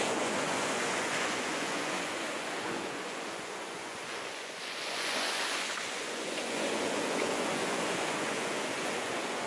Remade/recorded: remade